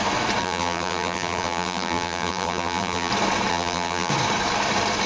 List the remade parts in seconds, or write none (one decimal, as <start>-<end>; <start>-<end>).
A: 0.4-3.1; 3.5-4.1